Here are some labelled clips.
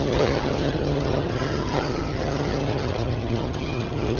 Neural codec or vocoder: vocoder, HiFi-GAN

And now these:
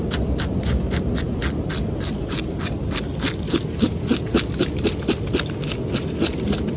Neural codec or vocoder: none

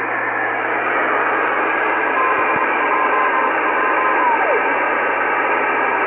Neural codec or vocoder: none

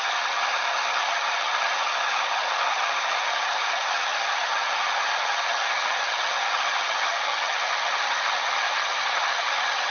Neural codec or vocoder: vocoder, HiFi-GAN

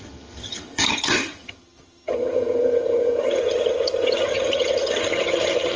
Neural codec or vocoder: vocoder, HiFi-GAN